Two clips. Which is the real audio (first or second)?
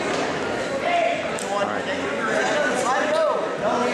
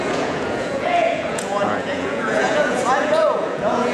first